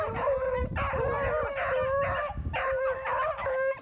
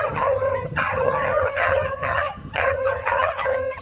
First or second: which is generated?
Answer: second